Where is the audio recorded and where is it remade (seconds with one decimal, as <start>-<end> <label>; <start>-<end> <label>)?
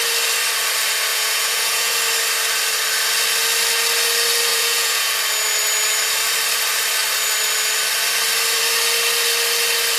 0.0-1.1 recorded; 1.1-1.9 remade; 1.9-4.5 recorded; 4.5-5.1 remade; 5.1-10.0 recorded